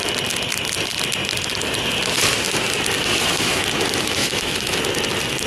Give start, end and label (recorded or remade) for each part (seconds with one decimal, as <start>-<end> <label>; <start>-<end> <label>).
0.0-4.2 recorded; 4.2-4.8 remade; 4.8-5.5 recorded